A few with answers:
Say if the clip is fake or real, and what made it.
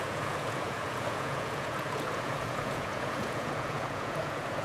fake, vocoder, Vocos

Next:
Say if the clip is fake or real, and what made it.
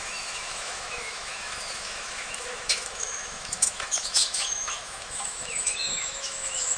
fake, autoencoder, DAC-VAE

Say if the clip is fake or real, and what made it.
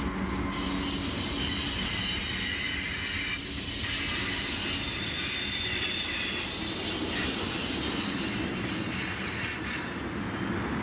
real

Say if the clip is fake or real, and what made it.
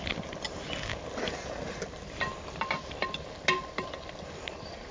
real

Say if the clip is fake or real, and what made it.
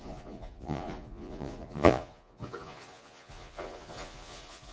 fake, vocoder, Vocos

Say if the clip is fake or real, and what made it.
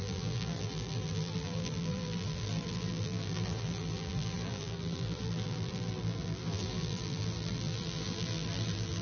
fake, vocoder, BigVGAN v2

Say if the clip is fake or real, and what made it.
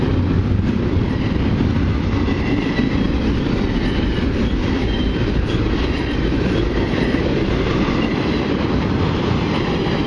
fake, vocoder, BigVGAN v2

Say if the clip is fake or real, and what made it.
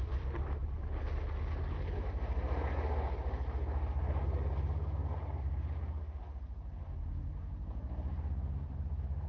real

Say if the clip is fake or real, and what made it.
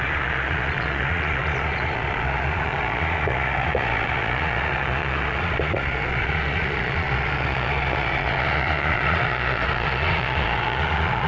fake, vocoder, Vocos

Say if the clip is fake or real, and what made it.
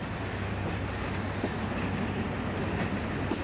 real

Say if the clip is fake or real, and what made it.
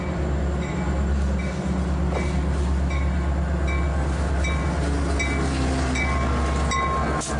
real